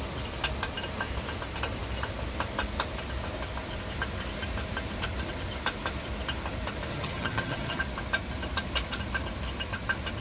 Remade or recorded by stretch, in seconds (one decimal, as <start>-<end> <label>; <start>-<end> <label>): 0.0-6.9 recorded; 6.9-7.8 remade; 7.8-10.2 recorded